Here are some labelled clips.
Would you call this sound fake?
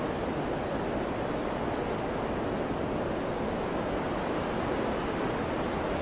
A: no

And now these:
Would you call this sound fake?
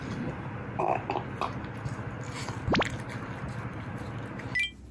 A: no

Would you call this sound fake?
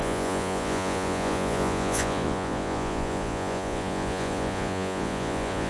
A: yes